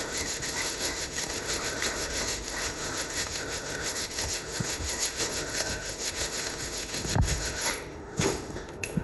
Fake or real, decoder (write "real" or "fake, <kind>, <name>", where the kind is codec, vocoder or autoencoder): fake, autoencoder, DAC-VAE